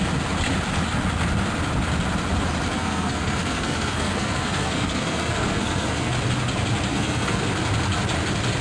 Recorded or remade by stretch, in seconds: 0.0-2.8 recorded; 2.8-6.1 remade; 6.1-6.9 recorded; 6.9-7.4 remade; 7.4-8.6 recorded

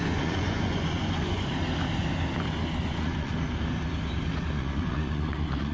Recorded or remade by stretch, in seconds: 0.0-1.5 remade; 1.5-2.8 recorded; 2.8-3.3 remade; 3.3-4.5 recorded; 4.5-5.7 remade

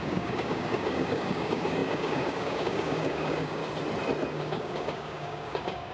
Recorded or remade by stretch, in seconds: 0.0-3.6 remade; 3.6-4.3 recorded; 4.3-5.9 remade

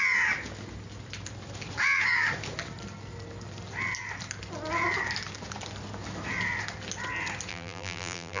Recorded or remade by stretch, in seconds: 0.0-7.5 recorded; 7.5-8.4 remade